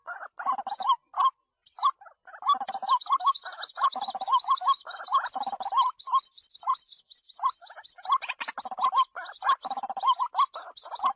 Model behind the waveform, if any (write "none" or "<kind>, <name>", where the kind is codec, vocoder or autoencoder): none